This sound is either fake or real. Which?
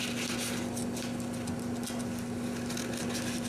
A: real